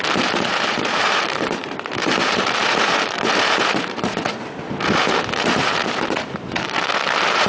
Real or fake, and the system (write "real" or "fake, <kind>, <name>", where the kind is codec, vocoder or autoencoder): fake, vocoder, BigVGAN v2